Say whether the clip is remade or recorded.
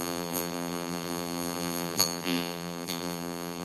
remade